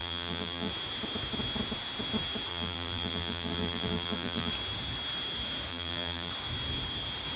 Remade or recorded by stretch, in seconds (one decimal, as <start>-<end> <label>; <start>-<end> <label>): 0.0-0.7 remade; 0.7-2.5 recorded; 2.5-4.5 remade; 4.5-5.7 recorded; 5.7-6.3 remade; 6.3-7.4 recorded